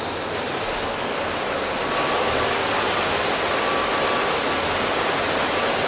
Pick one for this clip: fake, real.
real